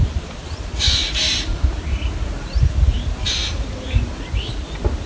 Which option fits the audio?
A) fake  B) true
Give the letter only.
B